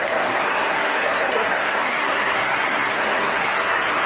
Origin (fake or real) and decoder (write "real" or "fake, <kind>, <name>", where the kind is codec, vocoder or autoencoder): fake, codec, SNAC